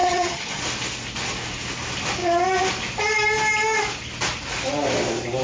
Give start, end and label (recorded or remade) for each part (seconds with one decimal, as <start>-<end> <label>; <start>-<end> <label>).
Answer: 0.0-0.6 remade; 0.6-5.4 recorded